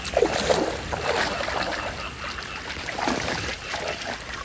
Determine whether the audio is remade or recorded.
recorded